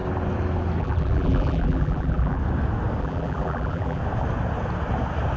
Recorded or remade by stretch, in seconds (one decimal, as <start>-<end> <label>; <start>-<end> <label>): 0.0-0.8 recorded; 0.8-2.4 remade; 2.4-3.0 recorded; 3.0-4.0 remade; 4.0-5.4 recorded